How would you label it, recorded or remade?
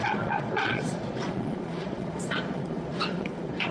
remade